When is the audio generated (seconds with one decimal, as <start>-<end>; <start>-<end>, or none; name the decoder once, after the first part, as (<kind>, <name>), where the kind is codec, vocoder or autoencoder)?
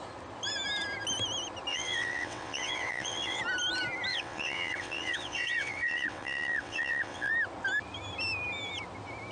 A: 1.7-3.4 (vocoder, WaveNeXt); 4.1-7.3